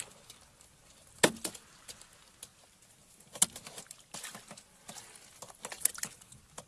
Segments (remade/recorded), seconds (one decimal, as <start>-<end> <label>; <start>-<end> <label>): 0.0-6.7 recorded